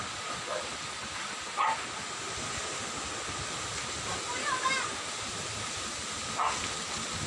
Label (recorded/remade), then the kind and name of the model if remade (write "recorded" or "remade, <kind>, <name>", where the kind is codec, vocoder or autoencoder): recorded